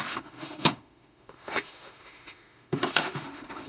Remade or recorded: remade